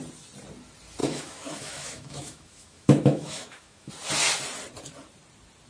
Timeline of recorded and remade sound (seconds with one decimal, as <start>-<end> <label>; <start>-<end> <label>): 0.0-1.0 recorded; 1.0-3.9 remade; 3.9-5.7 recorded